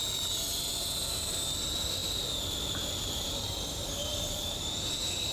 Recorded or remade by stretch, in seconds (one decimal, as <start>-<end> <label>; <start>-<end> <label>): 0.0-0.5 recorded; 0.5-1.5 remade; 1.5-2.0 recorded; 2.0-5.3 remade